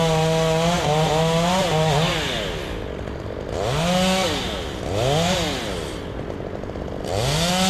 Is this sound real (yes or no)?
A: yes